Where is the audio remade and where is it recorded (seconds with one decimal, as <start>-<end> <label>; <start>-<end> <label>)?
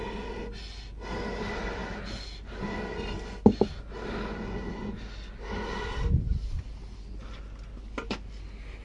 0.0-8.8 recorded